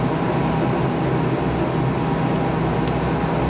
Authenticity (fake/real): real